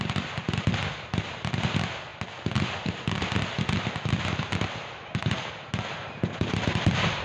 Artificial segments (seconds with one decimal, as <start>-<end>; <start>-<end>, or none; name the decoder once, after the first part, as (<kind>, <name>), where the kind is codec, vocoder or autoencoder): none

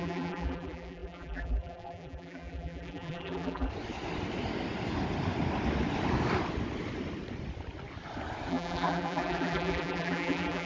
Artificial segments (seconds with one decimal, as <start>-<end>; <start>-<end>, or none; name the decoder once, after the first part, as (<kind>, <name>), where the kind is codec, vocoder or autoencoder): 0.0-3.7 (vocoder, BigVGAN v2); 8.5-10.7

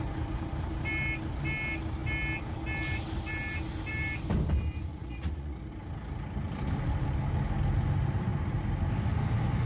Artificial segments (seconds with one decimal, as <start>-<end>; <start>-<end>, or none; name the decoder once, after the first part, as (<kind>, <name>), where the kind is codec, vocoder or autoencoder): 4.9-5.7 (vocoder, Vocos)

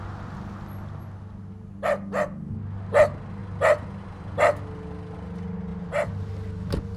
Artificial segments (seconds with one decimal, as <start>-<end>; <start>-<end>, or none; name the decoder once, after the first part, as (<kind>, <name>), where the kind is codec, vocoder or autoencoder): none

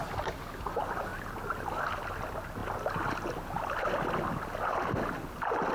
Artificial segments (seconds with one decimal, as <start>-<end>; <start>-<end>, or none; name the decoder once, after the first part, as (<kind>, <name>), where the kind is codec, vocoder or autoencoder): none

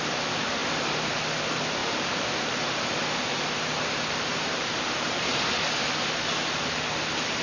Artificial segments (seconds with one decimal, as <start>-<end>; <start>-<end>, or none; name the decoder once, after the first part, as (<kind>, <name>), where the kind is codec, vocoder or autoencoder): 0.6-1.1 (vocoder, BigVGAN v2); 1.8-5.4